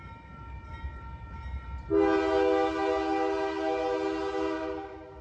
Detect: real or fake real